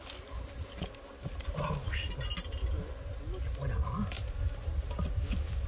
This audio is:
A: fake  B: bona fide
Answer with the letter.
B